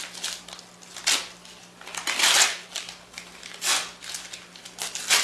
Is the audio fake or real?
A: fake